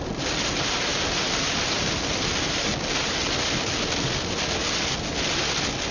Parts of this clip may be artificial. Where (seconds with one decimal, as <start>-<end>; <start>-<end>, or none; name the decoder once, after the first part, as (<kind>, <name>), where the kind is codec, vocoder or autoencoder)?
none